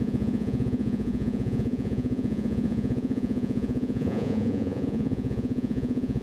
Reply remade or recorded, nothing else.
remade